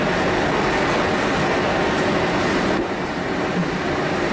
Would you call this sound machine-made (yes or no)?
no